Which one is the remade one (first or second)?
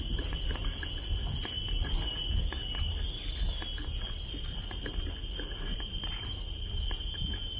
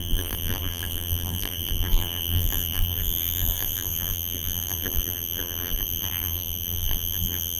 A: second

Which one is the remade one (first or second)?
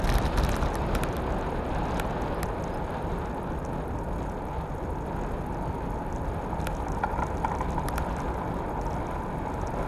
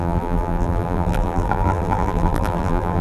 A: second